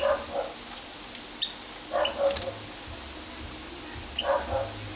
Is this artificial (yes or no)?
no